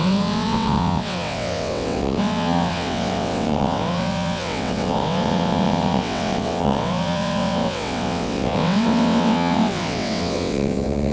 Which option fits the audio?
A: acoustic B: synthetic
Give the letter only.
B